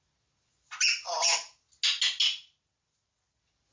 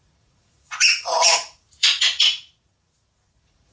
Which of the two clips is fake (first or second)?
second